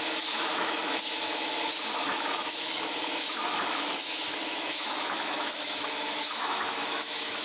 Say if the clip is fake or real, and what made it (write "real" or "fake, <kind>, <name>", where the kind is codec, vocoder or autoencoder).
fake, autoencoder, DAC-VAE